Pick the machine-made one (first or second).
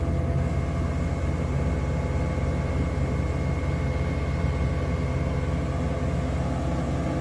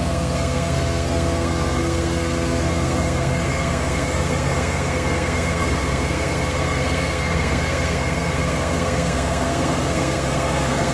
second